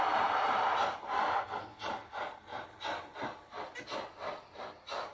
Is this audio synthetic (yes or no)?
no